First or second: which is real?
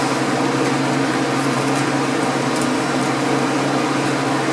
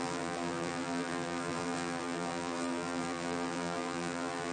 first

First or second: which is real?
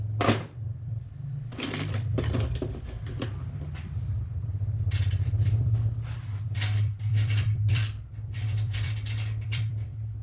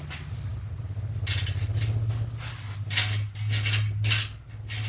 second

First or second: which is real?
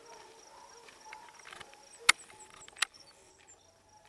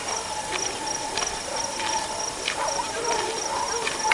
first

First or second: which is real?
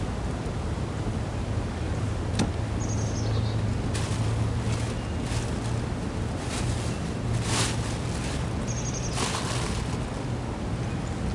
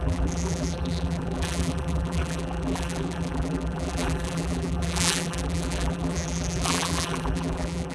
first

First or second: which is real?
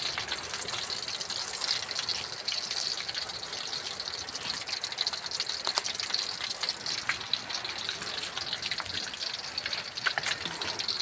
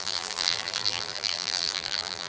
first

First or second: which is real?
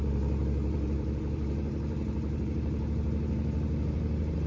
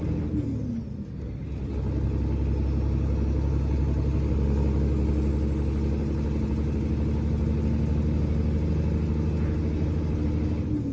second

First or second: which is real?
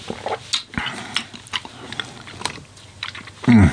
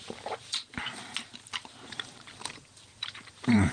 first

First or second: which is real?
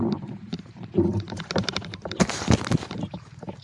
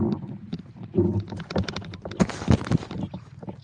second